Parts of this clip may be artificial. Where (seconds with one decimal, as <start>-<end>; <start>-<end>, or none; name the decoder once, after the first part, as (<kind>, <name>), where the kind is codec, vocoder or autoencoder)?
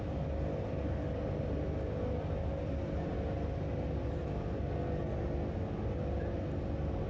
none